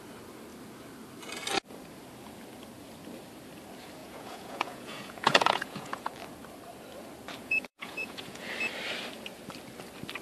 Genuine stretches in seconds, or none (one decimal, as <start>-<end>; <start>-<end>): 0.0-4.0; 6.1-7.4; 8.5-10.2